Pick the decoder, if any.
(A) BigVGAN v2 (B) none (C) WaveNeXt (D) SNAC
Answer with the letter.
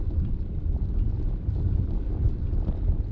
B